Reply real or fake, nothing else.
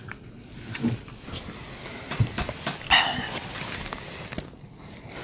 real